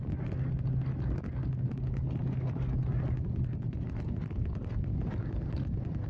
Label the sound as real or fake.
real